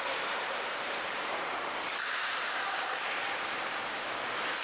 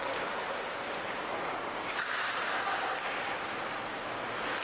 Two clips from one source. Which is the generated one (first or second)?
first